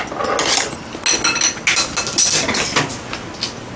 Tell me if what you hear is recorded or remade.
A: recorded